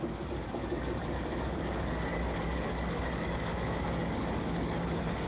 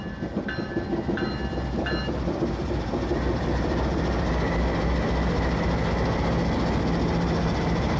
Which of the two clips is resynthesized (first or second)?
first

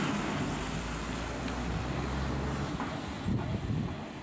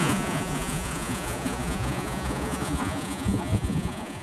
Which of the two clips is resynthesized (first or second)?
second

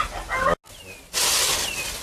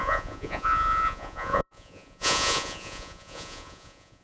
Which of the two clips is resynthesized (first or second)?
second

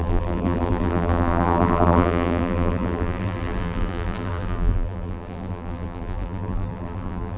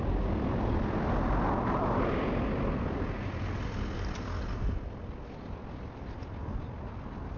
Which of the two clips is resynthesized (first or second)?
first